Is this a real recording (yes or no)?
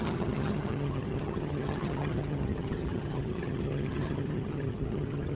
no